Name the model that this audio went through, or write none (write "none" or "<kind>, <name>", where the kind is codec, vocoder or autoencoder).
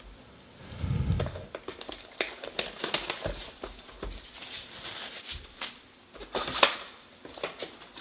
vocoder, BigVGAN v2